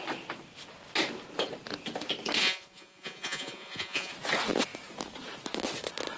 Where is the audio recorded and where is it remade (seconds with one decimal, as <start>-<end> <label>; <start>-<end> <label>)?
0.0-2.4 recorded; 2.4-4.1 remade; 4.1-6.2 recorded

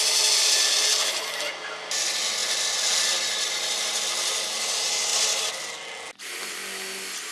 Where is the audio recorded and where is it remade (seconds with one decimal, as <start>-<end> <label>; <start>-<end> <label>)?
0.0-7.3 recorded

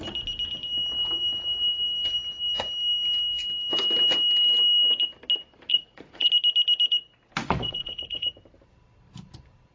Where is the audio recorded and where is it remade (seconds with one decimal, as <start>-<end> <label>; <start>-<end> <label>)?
0.0-5.7 recorded; 5.7-6.3 remade; 6.3-7.4 recorded; 7.4-8.4 remade; 8.4-9.7 recorded

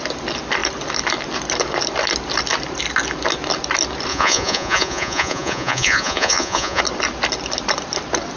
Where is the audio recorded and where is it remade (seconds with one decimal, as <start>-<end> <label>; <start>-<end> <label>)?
0.0-4.1 recorded; 4.1-6.8 remade; 6.8-8.4 recorded

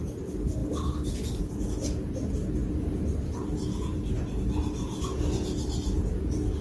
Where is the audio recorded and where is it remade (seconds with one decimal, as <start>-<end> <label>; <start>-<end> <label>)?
0.0-6.6 recorded

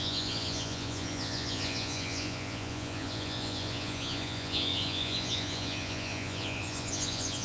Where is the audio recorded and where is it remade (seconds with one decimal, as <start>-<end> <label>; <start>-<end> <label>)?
0.0-7.4 remade

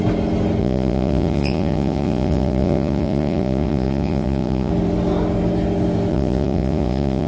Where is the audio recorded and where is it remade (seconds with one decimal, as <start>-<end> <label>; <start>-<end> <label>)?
0.0-0.6 recorded; 0.6-4.7 remade; 4.7-6.1 recorded; 6.1-7.3 remade